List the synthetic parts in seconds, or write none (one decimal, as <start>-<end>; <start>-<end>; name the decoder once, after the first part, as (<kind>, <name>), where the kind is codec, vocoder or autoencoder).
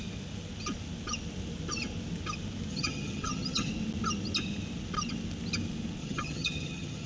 2.7-3.7 (vocoder, HiFi-GAN); 6.0-7.1